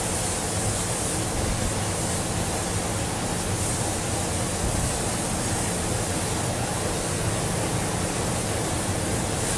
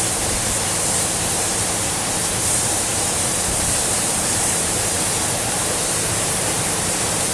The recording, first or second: first